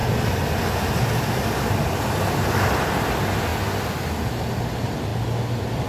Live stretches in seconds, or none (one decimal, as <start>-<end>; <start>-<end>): 0.0-5.9